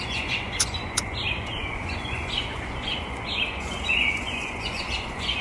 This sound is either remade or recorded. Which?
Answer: remade